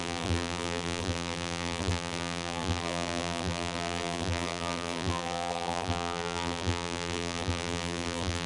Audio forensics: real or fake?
fake